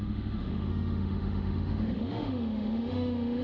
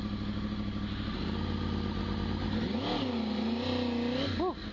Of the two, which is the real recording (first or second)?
second